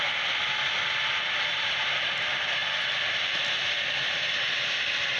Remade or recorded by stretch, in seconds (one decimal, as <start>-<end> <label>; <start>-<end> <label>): 0.0-5.2 recorded